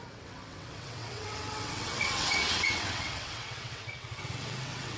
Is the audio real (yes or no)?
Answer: no